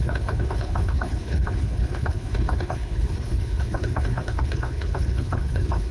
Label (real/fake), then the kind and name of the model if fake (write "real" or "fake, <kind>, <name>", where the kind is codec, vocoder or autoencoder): fake, codec, HILCodec